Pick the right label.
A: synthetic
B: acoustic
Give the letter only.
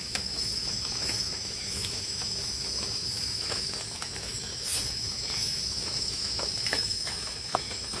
A